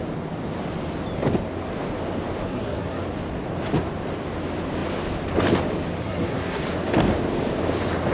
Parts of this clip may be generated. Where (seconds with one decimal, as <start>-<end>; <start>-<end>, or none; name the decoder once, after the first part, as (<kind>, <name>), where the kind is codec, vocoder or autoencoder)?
2.4-3.0 (codec, SNAC); 6.0-6.6